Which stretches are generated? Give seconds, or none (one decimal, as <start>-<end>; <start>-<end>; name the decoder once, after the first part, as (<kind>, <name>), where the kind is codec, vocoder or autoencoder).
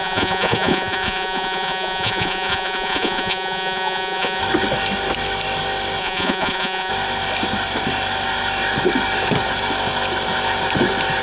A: 0.0-4.4 (vocoder, Vocos); 6.0-6.9